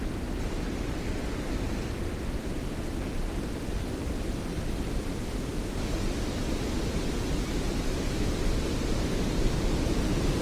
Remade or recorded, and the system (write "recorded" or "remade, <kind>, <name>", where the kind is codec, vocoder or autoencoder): recorded